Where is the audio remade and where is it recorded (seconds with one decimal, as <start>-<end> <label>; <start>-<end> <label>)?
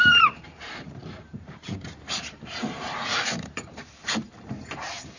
0.0-5.2 remade